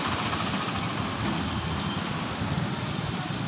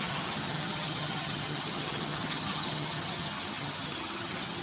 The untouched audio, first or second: first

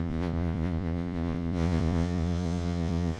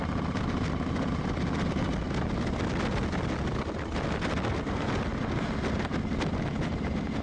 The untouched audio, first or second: second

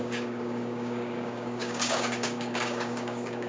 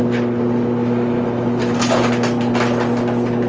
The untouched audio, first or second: second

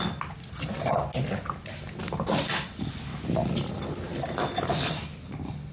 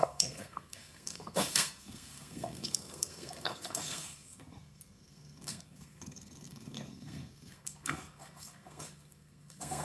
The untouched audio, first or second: first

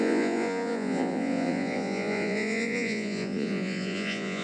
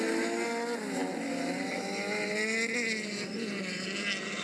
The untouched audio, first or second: second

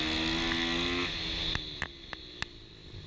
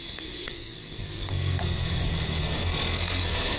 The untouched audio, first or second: first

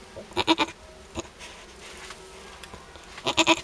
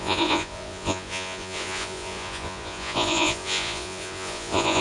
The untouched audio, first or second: first